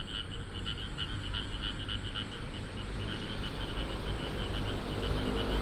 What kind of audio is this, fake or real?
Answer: real